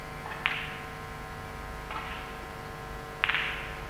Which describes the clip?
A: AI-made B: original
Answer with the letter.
B